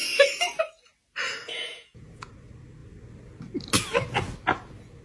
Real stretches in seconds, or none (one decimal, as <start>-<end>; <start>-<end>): 0.0-1.4; 2.3-5.0